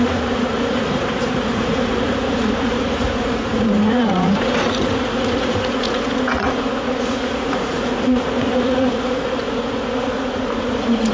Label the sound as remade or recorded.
remade